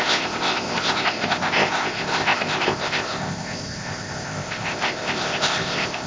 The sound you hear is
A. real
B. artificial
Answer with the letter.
B